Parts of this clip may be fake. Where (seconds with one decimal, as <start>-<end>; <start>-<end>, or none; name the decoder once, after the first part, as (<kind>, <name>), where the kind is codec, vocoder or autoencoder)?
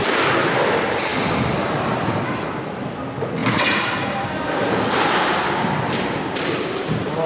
3.4-7.3 (vocoder, BigVGAN v2)